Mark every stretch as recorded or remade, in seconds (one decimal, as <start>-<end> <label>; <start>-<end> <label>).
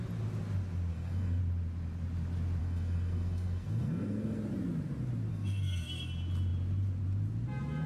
0.0-0.9 recorded; 0.9-1.4 remade; 1.4-2.6 recorded; 2.6-4.4 remade; 4.4-5.3 recorded; 5.3-6.1 remade; 6.1-7.9 recorded